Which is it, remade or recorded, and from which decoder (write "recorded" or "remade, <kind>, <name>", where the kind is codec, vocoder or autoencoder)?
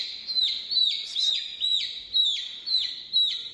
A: recorded